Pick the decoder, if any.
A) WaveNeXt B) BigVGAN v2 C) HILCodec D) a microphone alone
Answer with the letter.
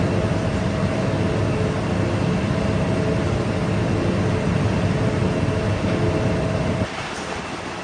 D